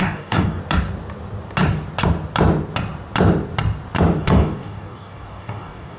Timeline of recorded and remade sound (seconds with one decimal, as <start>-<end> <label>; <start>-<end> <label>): 0.0-0.6 remade; 0.6-4.2 recorded; 4.2-6.0 remade

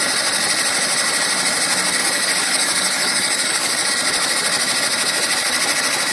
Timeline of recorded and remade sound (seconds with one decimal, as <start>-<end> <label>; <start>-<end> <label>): 0.0-2.0 recorded; 2.0-3.9 remade; 3.9-6.1 recorded